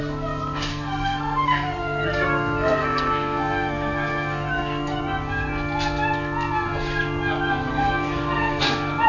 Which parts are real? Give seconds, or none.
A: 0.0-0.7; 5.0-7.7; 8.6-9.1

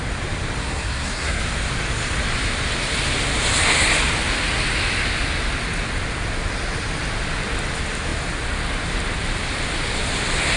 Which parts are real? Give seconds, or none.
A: 0.0-0.6; 1.4-10.6